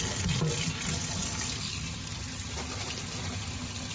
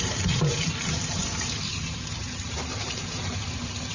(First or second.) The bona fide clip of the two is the first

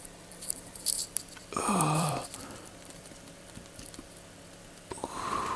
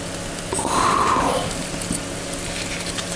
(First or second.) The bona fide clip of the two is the second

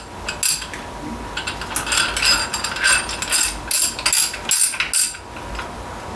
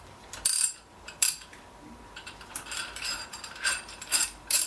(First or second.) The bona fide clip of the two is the first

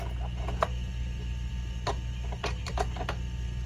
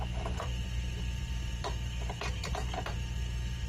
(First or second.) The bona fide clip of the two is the first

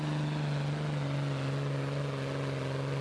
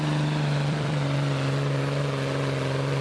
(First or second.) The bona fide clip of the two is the first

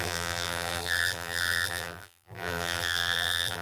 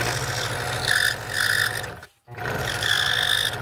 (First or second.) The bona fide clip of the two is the second